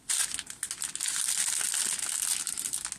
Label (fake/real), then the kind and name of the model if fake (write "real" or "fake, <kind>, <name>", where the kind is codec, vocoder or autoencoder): real